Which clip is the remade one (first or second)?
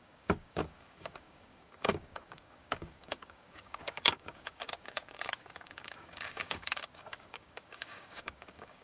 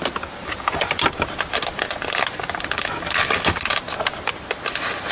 first